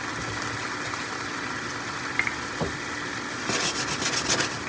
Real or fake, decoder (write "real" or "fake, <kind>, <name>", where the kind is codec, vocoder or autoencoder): real